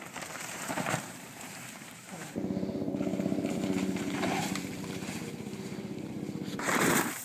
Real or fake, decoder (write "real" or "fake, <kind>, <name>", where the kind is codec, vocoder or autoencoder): fake, vocoder, BigVGAN v2